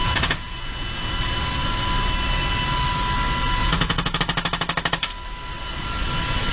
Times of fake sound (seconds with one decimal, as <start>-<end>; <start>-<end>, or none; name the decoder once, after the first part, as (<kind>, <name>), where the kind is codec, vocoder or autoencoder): 0.0-1.1 (vocoder, Vocos); 3.6-4.2